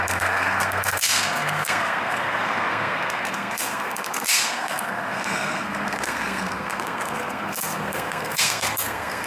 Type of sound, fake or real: fake